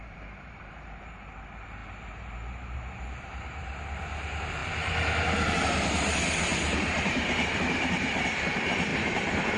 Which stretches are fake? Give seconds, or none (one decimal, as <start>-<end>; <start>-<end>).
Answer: 0.0-8.9